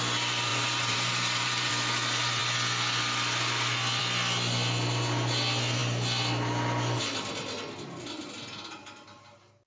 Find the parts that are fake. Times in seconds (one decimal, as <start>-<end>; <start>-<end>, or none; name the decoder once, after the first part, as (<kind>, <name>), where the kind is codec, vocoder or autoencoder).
0.5-1.7 (vocoder, BigVGAN v2)